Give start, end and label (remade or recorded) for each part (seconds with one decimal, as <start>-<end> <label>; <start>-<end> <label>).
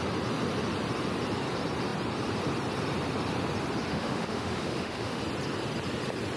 0.0-3.9 recorded; 3.9-5.2 remade; 5.2-6.4 recorded